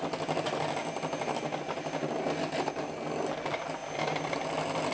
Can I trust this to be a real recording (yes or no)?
yes